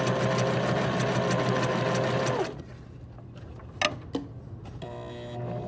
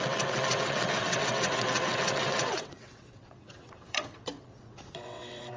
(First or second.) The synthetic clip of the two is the second